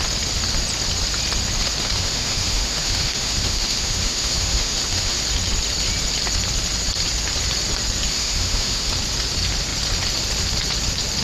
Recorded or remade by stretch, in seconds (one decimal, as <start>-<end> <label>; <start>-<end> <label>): 0.0-1.8 recorded; 1.8-5.2 remade; 5.2-8.1 recorded; 8.1-8.9 remade; 8.9-11.2 recorded